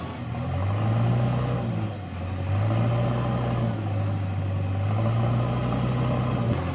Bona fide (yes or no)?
yes